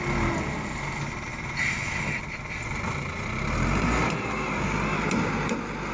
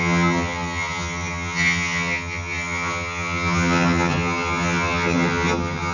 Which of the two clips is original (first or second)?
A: first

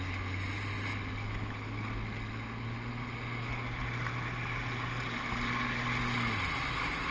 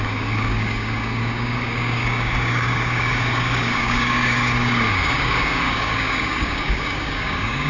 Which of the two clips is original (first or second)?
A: first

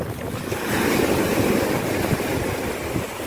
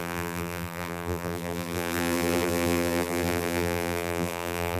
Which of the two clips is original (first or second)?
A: first